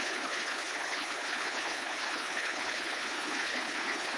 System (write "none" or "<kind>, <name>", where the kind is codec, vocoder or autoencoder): codec, HILCodec